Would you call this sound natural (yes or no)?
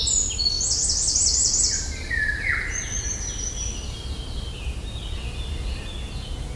yes